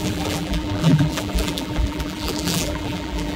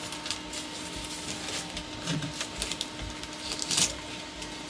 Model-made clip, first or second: first